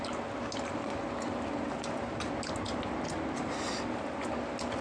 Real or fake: real